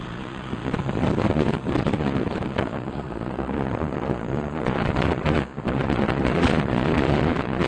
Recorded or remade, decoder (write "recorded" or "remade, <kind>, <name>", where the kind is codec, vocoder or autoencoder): remade, vocoder, Vocos